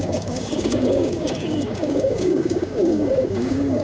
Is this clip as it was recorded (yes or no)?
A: no